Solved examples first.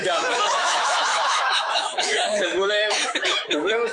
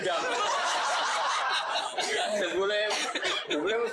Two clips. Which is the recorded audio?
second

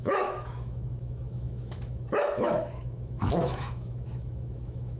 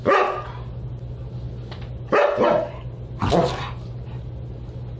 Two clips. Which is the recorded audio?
second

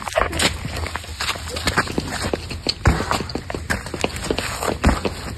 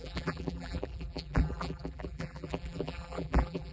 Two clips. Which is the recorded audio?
first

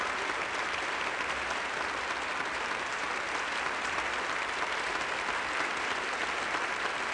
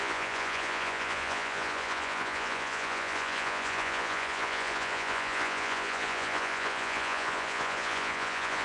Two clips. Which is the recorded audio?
first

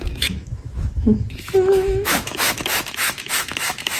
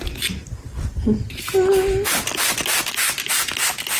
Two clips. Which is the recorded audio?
second